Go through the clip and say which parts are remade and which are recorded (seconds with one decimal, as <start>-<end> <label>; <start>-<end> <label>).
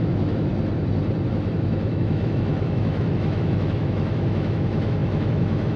0.0-0.5 remade; 0.5-1.3 recorded; 1.3-5.8 remade